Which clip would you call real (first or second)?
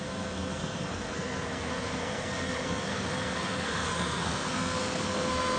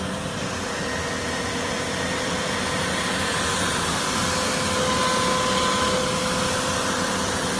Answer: second